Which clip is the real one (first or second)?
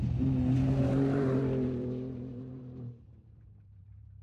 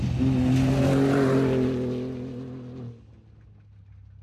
second